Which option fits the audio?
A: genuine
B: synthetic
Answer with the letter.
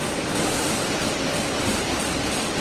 B